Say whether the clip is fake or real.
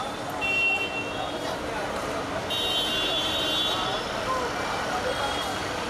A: real